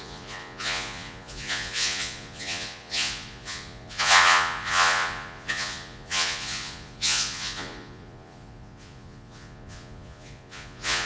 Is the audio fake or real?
fake